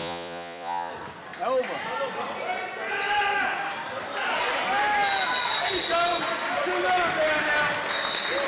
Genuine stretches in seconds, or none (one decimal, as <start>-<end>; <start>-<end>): 0.9-8.5